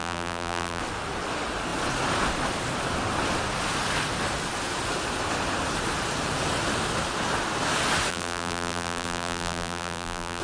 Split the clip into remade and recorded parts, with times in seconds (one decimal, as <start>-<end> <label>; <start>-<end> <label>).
0.0-0.8 remade; 0.8-8.1 recorded; 8.1-10.4 remade